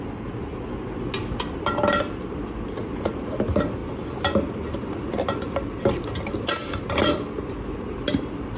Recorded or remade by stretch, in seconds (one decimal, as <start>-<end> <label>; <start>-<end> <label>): 0.0-8.6 recorded